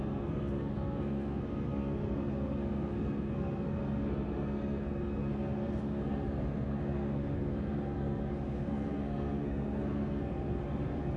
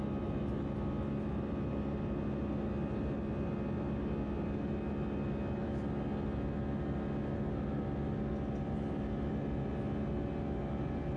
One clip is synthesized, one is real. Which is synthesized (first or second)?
first